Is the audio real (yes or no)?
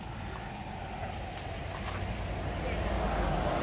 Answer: yes